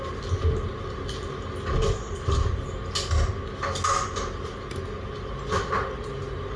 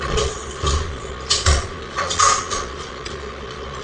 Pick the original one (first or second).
first